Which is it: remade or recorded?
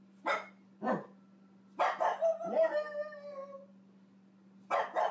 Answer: recorded